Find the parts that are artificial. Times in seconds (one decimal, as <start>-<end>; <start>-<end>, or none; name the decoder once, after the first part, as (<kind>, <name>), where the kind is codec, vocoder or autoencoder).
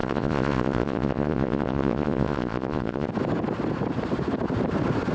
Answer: 0.0-3.1 (vocoder, Vocos)